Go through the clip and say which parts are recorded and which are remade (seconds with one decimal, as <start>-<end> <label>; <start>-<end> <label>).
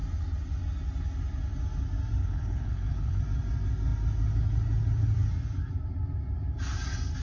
0.0-2.2 recorded; 2.2-3.2 remade; 3.2-7.2 recorded